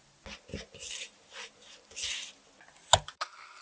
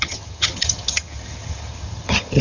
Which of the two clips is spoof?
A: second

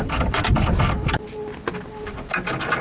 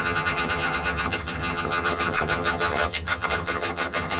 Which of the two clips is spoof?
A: second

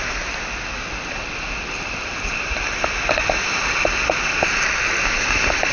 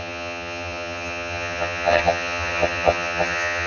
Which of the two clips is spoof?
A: second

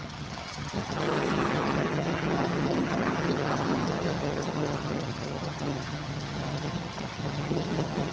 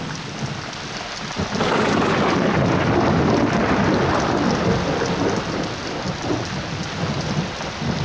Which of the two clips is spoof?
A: first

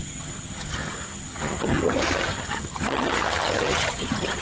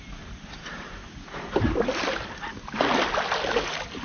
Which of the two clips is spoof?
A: first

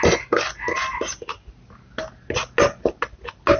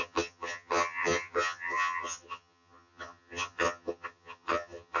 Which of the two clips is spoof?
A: second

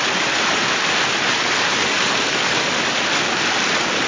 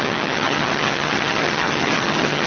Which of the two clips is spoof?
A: second